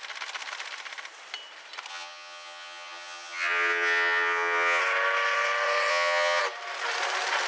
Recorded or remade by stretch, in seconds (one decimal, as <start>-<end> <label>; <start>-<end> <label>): 0.0-1.9 recorded; 1.9-4.8 remade; 4.8-5.9 recorded; 5.9-6.4 remade; 6.4-7.5 recorded